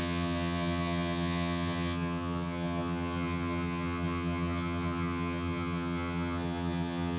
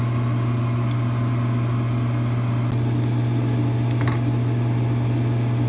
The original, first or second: second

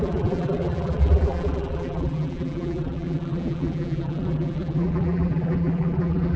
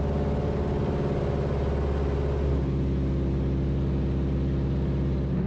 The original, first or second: second